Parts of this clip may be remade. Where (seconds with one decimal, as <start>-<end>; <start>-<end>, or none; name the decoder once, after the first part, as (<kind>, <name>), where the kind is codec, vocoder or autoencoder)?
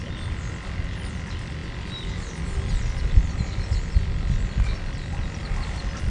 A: none